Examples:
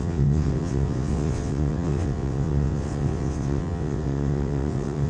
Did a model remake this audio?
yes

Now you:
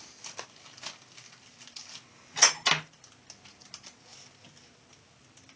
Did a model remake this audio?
no